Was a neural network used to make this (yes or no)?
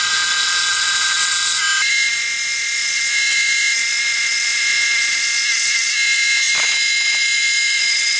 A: no